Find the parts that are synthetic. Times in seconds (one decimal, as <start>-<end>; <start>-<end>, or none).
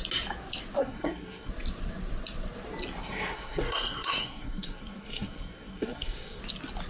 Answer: 0.8-1.5; 3.0-6.4